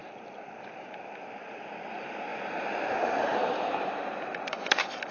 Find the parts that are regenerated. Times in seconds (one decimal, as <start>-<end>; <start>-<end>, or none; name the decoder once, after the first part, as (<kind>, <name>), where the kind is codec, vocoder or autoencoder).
0.0-5.1 (vocoder, BigVGAN v2)